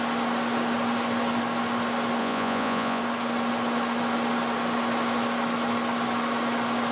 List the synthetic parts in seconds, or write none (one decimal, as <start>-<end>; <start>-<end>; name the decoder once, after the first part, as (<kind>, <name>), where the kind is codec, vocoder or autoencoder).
2.2-3.0 (vocoder, Vocos)